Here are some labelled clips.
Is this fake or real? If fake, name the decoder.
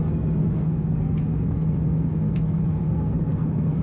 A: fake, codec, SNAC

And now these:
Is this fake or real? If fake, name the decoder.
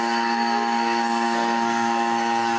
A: fake, codec, SNAC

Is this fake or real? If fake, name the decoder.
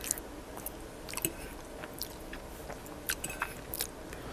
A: real